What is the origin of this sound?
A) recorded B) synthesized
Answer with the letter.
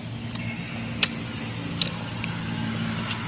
A